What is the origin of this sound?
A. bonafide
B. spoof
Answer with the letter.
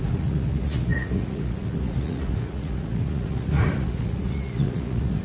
B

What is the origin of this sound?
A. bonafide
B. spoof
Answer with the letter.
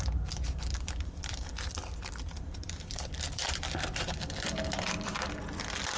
B